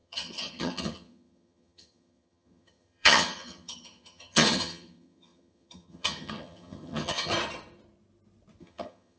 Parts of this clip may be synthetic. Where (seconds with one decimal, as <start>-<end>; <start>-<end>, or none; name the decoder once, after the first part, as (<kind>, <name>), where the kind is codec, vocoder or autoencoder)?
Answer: 0.0-7.3 (vocoder, HiFi-GAN); 8.6-9.2